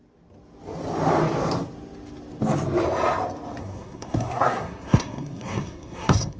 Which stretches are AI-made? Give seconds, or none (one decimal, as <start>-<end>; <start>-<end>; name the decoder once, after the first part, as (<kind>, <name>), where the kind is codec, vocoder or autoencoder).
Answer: 3.6-6.4 (codec, SNAC)